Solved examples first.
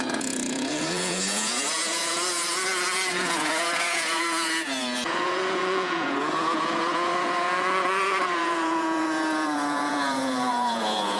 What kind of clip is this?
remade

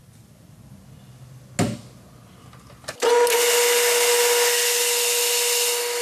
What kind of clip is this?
recorded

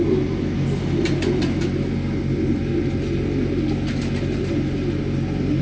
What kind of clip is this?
recorded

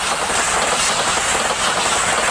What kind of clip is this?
recorded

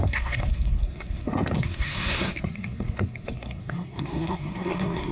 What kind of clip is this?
remade